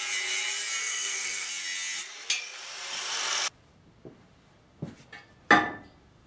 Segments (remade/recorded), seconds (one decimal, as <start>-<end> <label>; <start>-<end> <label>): 0.0-0.8 recorded; 0.8-1.5 remade; 1.5-6.3 recorded